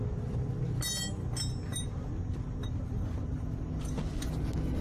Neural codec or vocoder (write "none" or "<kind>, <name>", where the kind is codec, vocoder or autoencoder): none